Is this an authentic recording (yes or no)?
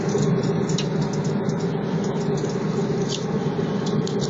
yes